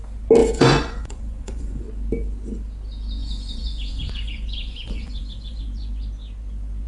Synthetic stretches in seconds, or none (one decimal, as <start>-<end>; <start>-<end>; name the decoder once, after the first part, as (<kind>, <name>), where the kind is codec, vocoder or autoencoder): 0.4-1.8 (vocoder, Vocos); 3.2-5.6